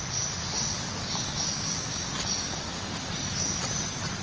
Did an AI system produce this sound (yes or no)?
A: no